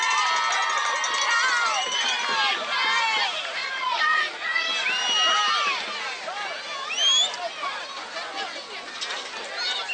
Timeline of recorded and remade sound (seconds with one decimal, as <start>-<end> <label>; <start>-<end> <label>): 0.0-3.6 recorded; 3.6-4.7 remade; 4.7-9.9 recorded